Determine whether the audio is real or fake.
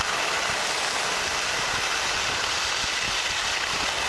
real